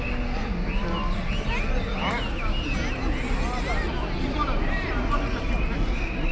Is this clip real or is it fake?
real